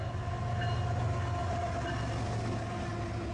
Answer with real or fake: real